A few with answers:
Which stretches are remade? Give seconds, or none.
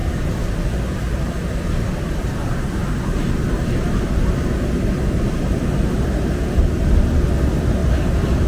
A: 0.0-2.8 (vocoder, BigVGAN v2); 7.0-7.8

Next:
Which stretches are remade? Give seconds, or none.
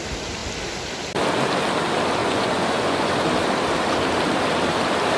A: 2.2-3.1 (vocoder, Vocos)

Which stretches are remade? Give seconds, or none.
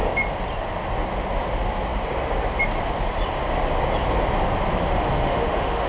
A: 4.8-5.9 (autoencoder, DAC-VAE)